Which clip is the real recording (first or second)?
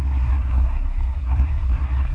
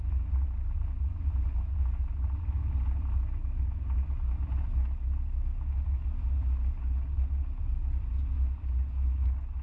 second